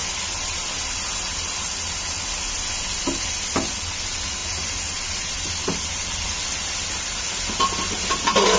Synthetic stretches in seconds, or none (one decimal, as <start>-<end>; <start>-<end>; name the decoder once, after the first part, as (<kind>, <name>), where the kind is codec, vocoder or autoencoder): none